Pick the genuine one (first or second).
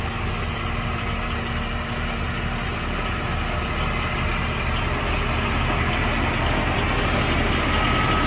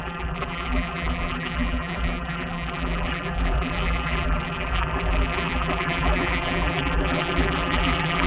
first